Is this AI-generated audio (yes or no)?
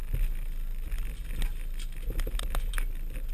no